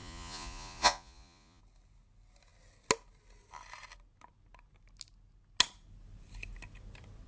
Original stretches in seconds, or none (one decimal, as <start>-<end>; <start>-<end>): 1.6-7.3